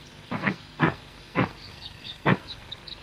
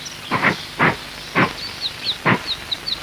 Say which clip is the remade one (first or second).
first